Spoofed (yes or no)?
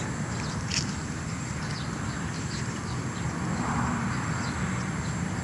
yes